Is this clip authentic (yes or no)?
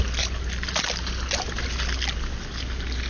yes